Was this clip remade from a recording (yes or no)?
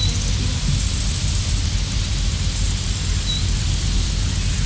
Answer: no